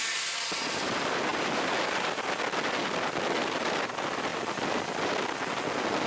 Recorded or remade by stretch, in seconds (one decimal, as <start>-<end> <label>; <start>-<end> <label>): 0.0-6.1 recorded